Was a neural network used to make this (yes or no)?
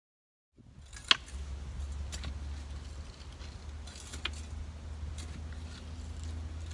no